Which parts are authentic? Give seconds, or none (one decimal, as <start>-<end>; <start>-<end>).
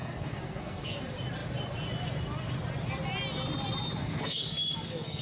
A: 1.0-4.0